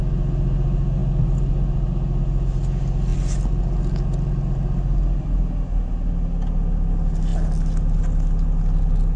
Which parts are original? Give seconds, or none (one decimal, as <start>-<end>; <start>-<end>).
0.0-9.2